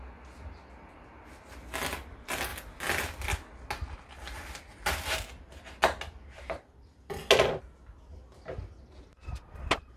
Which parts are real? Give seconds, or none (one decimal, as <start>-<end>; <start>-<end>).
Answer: 0.0-10.0